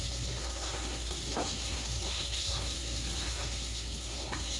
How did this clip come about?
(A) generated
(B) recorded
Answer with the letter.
A